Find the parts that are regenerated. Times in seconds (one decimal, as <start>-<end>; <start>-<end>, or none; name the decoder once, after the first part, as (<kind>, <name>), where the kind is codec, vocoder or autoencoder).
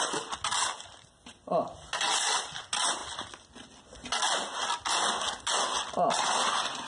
none